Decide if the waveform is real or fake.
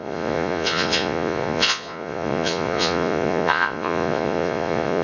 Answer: fake